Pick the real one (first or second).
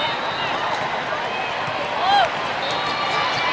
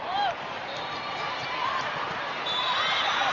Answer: first